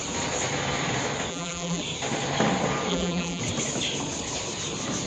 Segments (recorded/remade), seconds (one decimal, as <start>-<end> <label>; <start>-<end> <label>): 0.0-1.3 recorded; 1.3-1.8 remade; 1.8-2.9 recorded; 2.9-3.4 remade; 3.4-5.1 recorded